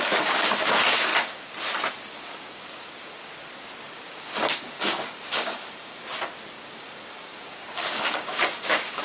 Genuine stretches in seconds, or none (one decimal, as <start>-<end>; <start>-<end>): 1.1-1.9; 3.2-3.8; 6.0-6.5